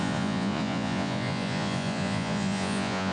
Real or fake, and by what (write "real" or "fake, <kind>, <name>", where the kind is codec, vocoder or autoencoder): fake, vocoder, Vocos